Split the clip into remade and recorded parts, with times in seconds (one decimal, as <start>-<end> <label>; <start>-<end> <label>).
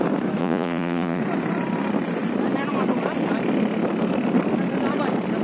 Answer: 0.0-0.4 recorded; 0.4-1.2 remade; 1.2-5.4 recorded